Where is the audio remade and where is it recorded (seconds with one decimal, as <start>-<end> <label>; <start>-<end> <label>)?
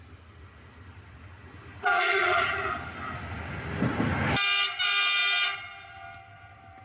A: 0.0-1.9 recorded; 1.9-2.7 remade; 2.7-6.8 recorded